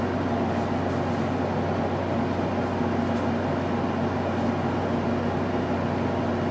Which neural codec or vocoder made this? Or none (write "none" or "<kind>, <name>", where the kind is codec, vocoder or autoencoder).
none